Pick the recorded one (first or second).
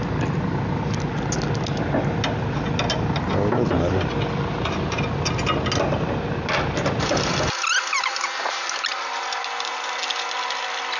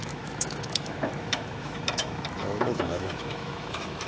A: first